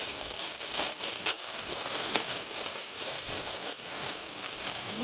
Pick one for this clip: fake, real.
fake